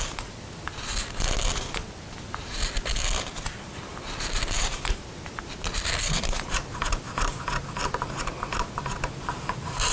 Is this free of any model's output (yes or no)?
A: yes